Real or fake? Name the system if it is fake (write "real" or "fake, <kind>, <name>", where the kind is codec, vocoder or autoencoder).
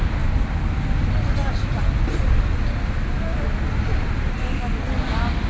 real